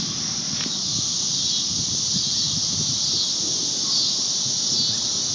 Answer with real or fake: real